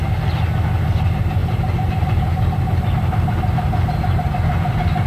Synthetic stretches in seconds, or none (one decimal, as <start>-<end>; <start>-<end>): none